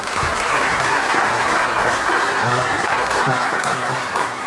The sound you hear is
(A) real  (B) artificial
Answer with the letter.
B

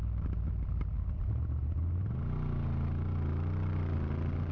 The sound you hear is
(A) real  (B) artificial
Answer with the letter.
A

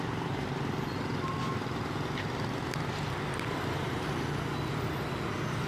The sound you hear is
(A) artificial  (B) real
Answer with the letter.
B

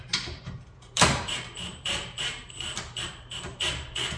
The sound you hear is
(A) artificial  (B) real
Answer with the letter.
A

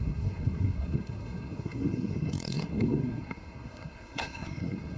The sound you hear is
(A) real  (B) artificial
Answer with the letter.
B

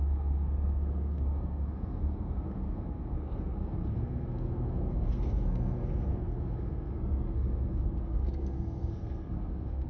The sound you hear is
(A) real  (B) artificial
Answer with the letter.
B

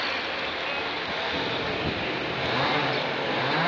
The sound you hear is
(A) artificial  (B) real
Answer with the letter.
B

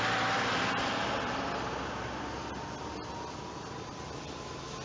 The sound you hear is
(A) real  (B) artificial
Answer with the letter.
A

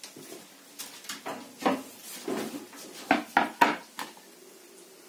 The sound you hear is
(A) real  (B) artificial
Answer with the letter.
A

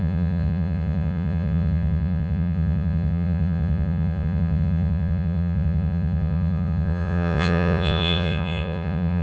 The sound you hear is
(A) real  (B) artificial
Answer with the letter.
B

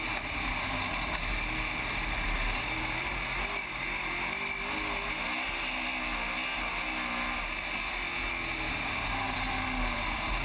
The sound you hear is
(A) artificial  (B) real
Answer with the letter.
B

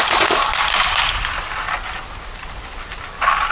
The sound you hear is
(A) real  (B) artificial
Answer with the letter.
A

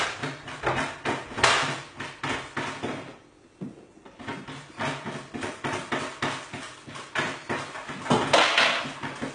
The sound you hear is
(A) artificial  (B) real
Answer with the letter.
B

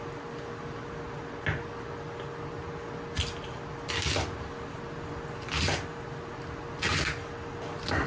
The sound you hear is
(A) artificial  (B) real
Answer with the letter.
B